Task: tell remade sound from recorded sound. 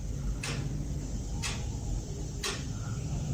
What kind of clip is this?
recorded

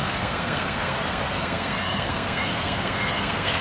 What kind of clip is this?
remade